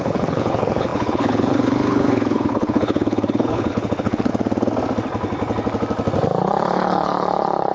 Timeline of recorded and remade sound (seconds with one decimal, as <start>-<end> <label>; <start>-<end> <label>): 0.0-4.3 remade; 4.3-6.4 recorded; 6.4-7.7 remade